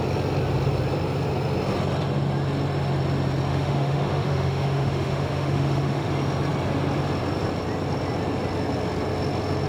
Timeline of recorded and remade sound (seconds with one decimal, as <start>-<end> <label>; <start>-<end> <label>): 0.0-3.5 recorded; 3.5-6.1 remade; 6.1-9.7 recorded